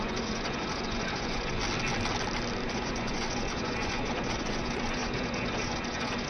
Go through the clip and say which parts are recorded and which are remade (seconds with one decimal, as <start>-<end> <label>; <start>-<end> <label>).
0.0-1.6 remade; 1.6-2.7 recorded; 2.7-6.3 remade